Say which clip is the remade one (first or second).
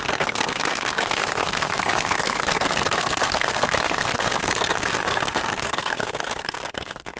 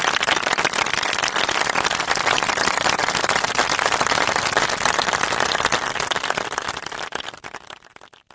first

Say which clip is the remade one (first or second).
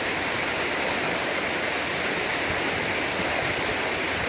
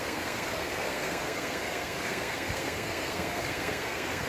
second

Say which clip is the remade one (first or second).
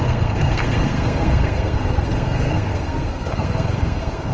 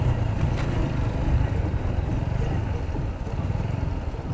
first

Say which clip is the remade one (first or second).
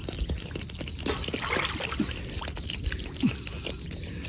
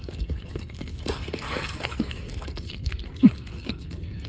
second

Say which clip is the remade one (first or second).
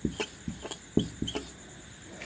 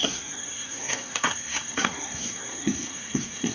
second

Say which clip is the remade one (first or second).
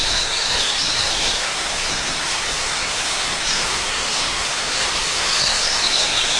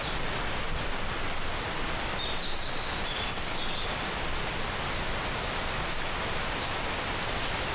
first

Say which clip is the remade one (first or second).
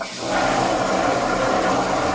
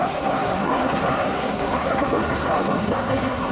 second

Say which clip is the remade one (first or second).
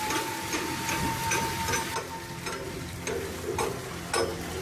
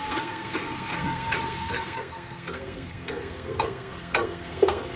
second